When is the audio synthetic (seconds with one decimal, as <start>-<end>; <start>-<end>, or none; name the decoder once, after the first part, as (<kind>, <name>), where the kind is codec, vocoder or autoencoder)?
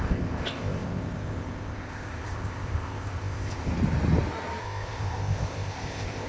0.0-3.7 (codec, ZipCodec); 4.6-6.3